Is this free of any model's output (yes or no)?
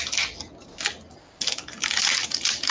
yes